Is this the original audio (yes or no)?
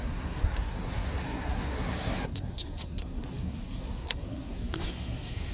no